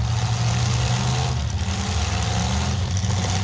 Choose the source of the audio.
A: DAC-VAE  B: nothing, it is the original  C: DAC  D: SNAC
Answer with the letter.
B